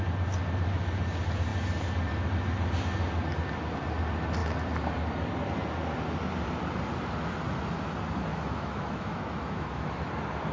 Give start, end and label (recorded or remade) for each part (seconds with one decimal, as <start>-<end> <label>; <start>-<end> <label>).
0.0-8.3 recorded; 8.3-10.1 remade; 10.1-10.5 recorded